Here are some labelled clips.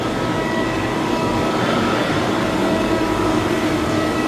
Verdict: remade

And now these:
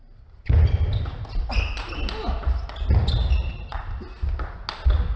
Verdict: recorded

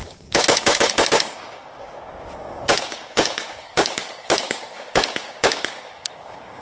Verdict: remade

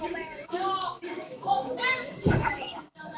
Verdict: remade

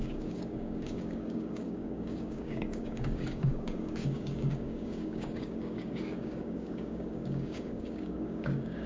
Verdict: remade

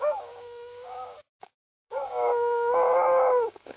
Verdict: remade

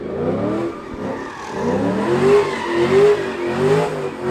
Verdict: recorded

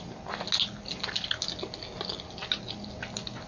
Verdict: recorded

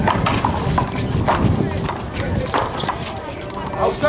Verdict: recorded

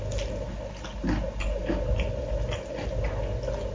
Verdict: recorded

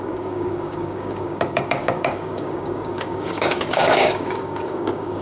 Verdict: remade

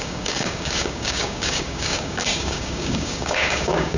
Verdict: remade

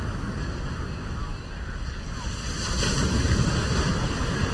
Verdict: recorded